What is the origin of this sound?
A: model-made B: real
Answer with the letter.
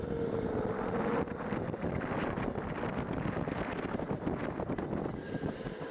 B